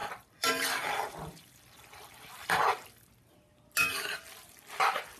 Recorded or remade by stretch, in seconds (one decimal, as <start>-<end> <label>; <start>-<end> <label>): 0.0-3.1 remade; 3.1-5.2 recorded